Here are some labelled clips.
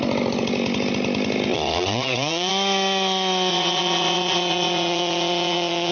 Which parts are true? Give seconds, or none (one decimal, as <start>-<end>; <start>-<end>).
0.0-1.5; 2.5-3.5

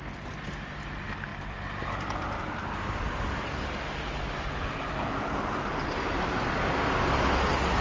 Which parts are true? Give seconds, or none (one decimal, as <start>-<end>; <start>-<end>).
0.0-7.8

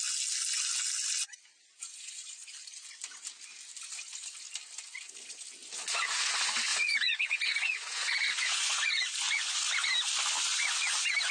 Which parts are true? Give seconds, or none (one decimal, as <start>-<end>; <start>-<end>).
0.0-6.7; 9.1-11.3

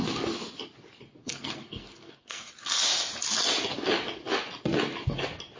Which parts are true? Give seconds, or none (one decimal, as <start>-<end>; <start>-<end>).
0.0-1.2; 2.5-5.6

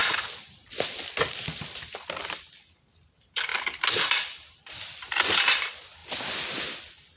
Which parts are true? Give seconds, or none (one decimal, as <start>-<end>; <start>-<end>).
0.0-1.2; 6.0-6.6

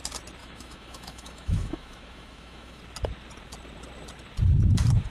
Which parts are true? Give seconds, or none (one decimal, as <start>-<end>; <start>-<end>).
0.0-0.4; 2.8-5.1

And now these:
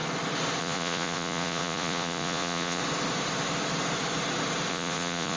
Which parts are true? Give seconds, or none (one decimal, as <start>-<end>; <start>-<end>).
0.0-0.6; 2.8-4.7